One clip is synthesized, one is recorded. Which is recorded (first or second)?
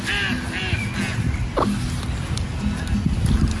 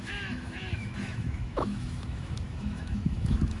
first